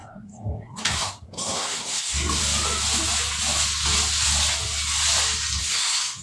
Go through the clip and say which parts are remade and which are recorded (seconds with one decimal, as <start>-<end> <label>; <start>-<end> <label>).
0.0-2.4 remade; 2.4-5.6 recorded; 5.6-6.2 remade